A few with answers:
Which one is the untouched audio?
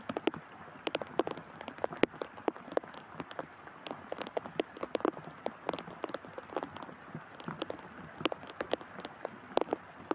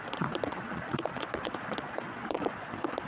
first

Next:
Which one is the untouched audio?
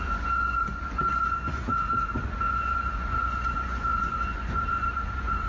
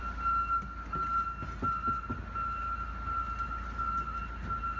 second